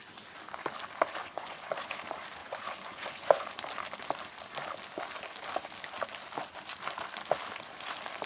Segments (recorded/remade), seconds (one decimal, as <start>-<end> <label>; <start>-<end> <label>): 0.0-1.2 recorded; 1.2-1.7 remade; 1.7-2.4 recorded; 2.4-3.5 remade; 3.5-8.3 recorded